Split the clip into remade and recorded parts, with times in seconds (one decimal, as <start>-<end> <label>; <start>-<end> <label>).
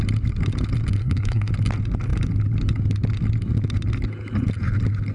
0.0-1.0 recorded; 1.0-1.5 remade; 1.5-5.1 recorded